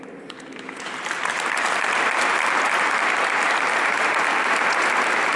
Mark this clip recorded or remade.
remade